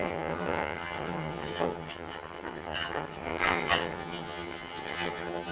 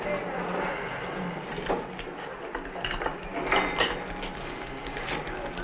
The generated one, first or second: first